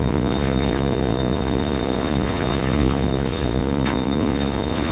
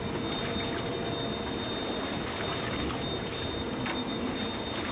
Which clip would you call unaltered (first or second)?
second